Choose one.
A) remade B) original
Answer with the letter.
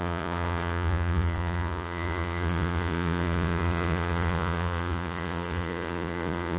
A